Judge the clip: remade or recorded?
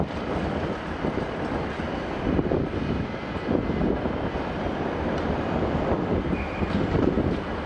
remade